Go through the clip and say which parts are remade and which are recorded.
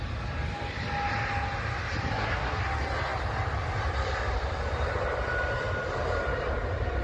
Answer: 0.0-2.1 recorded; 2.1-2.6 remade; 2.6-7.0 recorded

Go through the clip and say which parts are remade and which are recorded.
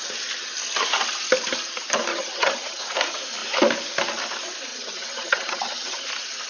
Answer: 0.0-2.1 recorded; 2.1-2.8 remade; 2.8-4.7 recorded; 4.7-6.1 remade; 6.1-6.5 recorded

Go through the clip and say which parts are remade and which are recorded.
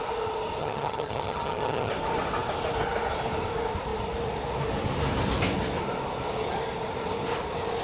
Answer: 0.0-0.6 recorded; 0.6-1.9 remade; 1.9-7.8 recorded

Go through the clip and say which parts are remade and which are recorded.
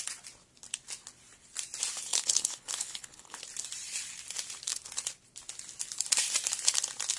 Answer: 0.0-2.1 recorded; 2.1-3.4 remade; 3.4-7.2 recorded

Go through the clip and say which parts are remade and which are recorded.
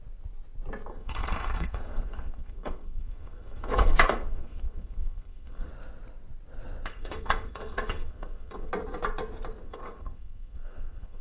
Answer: 0.0-0.9 recorded; 0.9-5.7 remade; 5.7-6.9 recorded; 6.9-8.7 remade; 8.7-9.6 recorded; 9.6-11.2 remade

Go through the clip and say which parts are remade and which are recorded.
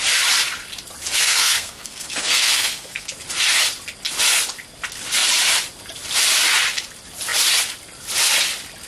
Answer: 0.0-1.2 recorded; 1.2-3.1 remade; 3.1-8.9 recorded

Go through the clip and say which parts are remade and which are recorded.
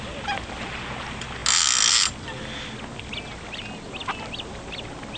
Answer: 0.0-5.2 recorded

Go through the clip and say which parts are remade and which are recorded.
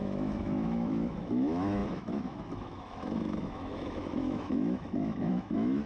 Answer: 0.0-5.9 remade